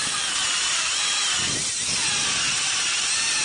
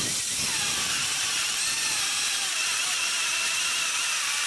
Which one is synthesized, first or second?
second